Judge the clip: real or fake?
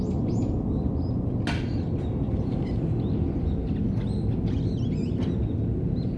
real